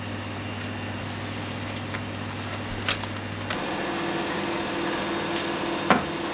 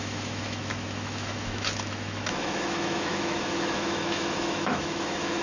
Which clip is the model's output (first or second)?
second